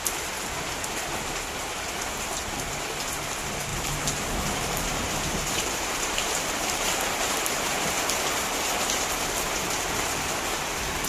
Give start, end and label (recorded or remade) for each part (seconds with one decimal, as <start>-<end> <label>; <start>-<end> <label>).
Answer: 0.0-3.7 recorded; 3.7-7.9 remade; 7.9-11.1 recorded